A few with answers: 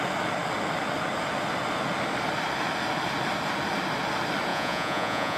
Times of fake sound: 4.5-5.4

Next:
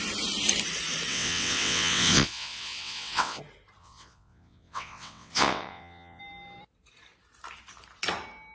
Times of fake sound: 1.1-3.4; 3.8-6.2

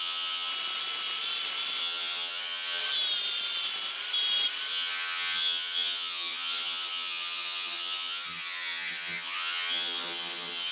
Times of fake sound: 0.0-0.5; 1.8-2.8; 4.7-10.7

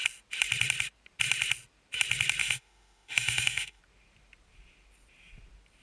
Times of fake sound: 2.4-3.8

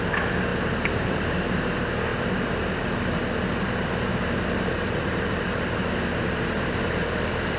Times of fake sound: none